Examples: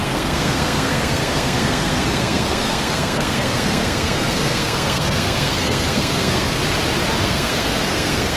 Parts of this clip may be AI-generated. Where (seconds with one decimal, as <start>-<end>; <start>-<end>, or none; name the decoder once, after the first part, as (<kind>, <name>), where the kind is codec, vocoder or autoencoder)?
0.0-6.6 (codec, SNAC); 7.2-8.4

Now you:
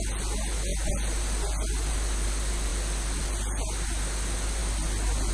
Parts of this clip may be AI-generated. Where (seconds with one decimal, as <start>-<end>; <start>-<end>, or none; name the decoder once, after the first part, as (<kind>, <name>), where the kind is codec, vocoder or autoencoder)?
none

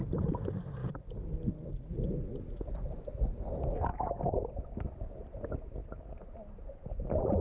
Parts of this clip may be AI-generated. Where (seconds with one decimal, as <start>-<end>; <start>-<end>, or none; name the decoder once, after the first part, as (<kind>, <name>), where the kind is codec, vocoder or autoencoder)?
none

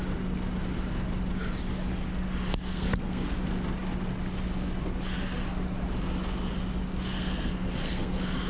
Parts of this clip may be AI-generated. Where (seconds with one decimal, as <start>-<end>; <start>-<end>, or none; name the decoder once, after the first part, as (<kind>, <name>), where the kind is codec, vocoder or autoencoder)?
2.7-3.4 (codec, SNAC); 7.1-8.1